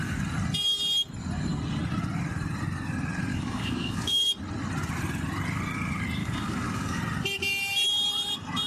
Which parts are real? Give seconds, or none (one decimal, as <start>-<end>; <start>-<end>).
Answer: 0.0-3.3; 4.2-6.2; 7.0-8.7